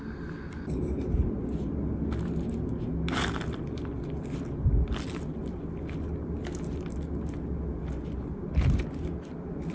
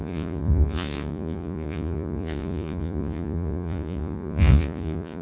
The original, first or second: first